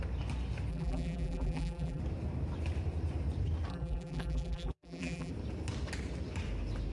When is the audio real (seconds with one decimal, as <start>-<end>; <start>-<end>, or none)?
0.0-0.7; 2.0-3.7; 5.3-6.9